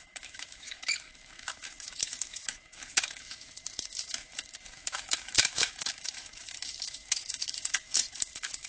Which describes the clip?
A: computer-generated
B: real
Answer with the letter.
A